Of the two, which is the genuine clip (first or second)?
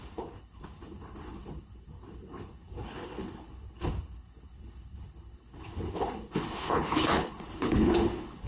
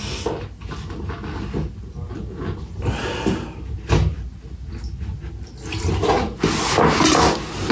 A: second